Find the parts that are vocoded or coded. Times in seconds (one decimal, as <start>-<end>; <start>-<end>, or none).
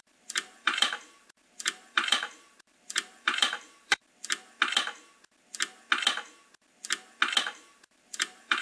0.0-4.0; 7.4-8.6